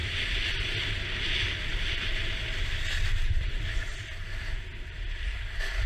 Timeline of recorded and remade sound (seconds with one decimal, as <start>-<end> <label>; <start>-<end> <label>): 0.0-5.9 recorded